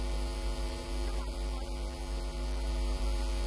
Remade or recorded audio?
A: remade